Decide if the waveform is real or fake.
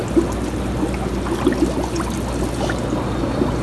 real